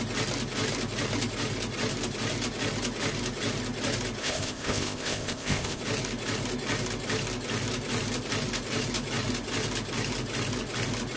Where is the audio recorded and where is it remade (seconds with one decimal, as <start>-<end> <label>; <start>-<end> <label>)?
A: 0.0-4.2 recorded; 4.2-5.8 remade; 5.8-11.2 recorded